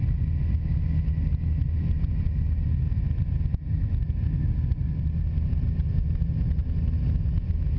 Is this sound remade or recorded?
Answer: recorded